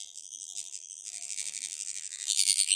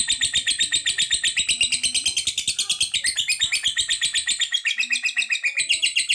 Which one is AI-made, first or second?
first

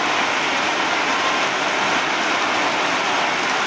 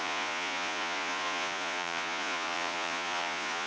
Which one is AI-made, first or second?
second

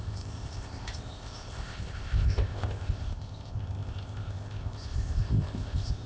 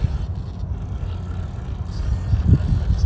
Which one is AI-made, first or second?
first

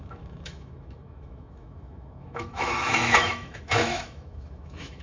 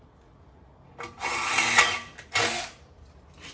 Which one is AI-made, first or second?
first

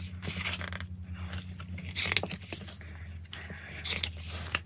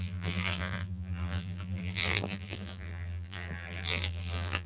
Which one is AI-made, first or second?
second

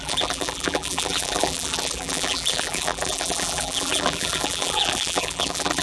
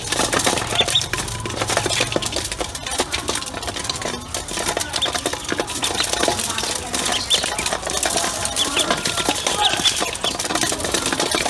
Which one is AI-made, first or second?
first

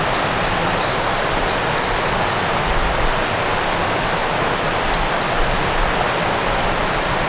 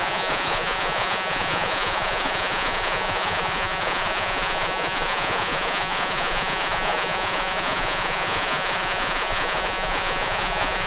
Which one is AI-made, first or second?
second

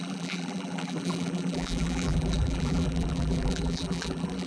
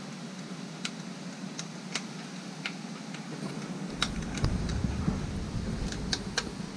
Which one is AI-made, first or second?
first